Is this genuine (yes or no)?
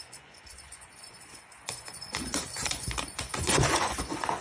no